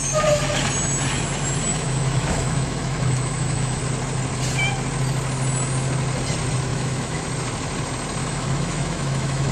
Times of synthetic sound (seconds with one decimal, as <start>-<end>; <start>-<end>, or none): 1.7-3.8; 6.7-7.2; 8.2-9.5